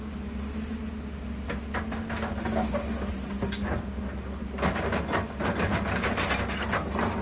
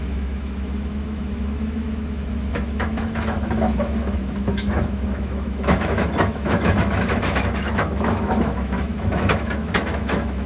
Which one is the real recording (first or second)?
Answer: first